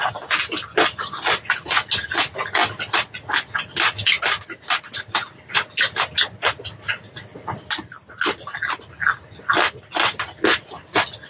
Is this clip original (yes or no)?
yes